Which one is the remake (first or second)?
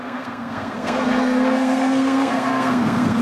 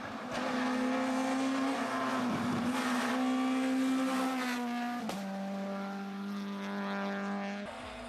first